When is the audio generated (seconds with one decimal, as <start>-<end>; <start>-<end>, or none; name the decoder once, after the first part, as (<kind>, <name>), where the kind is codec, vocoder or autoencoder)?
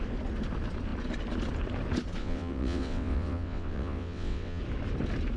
2.2-4.6 (vocoder, WaveNeXt)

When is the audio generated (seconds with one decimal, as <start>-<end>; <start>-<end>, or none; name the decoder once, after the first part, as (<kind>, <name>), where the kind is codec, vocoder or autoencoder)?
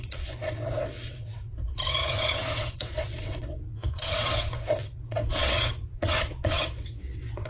0.0-7.5 (vocoder, WaveNeXt)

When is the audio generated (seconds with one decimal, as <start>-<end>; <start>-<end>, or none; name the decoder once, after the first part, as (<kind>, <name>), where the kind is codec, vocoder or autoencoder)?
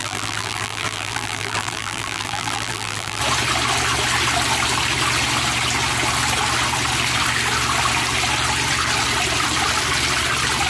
0.0-3.2 (vocoder, BigVGAN v2)